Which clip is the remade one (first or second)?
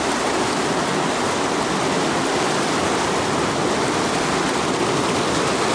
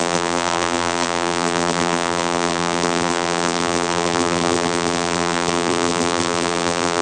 second